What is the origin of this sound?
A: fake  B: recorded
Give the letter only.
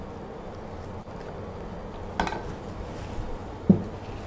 B